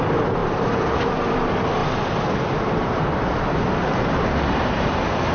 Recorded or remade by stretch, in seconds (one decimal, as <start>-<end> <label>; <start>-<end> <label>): 0.0-1.8 remade; 1.8-4.5 recorded; 4.5-5.3 remade